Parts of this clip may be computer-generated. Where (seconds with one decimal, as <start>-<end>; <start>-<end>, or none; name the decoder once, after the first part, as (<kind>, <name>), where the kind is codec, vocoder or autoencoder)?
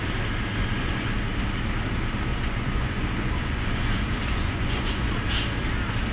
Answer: 0.5-1.1 (vocoder, Vocos); 2.3-5.1